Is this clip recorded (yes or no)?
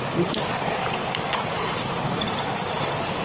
no